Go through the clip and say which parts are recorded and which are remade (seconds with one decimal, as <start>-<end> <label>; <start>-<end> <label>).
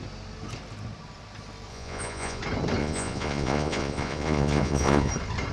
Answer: 0.0-1.7 recorded; 1.7-2.4 remade; 2.4-2.8 recorded; 2.8-5.1 remade; 5.1-5.5 recorded